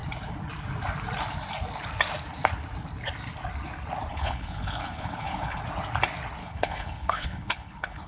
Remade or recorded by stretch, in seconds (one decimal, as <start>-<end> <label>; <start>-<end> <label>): 0.0-4.1 recorded; 4.1-5.6 remade; 5.6-6.4 recorded; 6.4-8.1 remade